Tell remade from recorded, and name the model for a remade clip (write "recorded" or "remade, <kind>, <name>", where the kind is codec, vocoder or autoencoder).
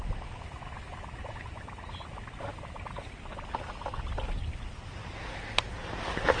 recorded